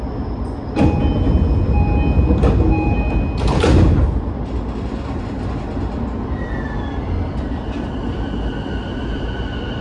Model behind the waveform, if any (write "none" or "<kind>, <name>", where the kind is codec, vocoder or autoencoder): none